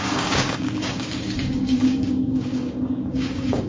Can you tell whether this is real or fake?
fake